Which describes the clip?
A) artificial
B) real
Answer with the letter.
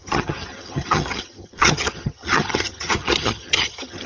A